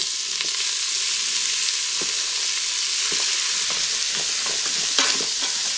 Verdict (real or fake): real